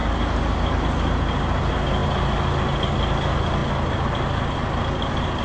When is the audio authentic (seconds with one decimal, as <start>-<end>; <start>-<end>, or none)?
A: 0.0-5.4